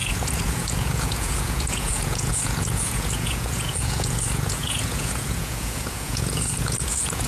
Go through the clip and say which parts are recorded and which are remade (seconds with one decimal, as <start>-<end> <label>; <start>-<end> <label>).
0.0-7.3 remade